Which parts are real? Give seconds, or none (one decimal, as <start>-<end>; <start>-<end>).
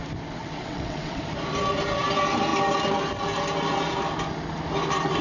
0.0-0.4; 1.2-5.2